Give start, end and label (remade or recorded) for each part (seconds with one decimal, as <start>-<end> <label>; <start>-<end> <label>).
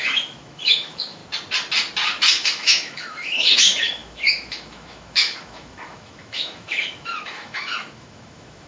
0.0-1.2 remade; 1.2-2.3 recorded; 2.3-8.7 remade